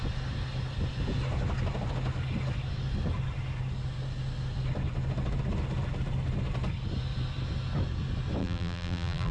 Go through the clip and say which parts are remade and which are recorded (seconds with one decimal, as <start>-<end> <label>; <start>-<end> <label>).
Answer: 0.0-8.4 recorded; 8.4-9.3 remade